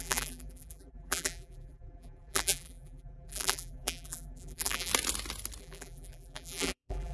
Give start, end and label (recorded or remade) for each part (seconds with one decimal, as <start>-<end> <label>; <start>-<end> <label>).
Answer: 0.0-4.9 remade; 4.9-5.6 recorded; 5.6-7.1 remade